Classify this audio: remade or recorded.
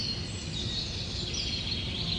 recorded